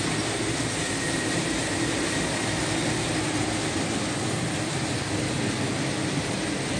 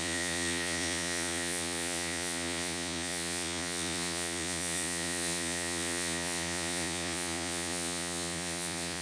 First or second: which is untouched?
first